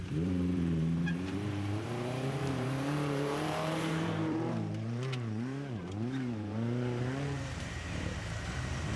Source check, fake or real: fake